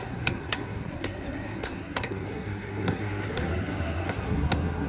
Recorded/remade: remade